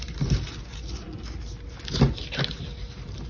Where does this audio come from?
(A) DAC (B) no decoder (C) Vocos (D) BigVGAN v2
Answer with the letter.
B